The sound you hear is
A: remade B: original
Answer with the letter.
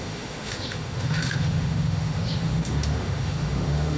A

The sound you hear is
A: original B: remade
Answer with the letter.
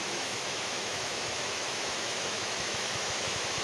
B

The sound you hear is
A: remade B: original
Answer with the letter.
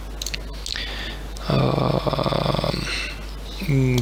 B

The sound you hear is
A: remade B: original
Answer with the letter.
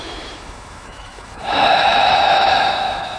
A